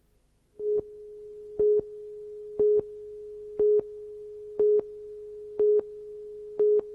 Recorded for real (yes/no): yes